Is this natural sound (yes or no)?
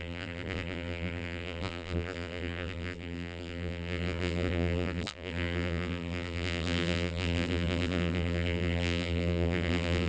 no